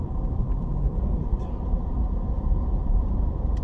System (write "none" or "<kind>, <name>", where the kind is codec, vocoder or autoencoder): vocoder, BigVGAN v2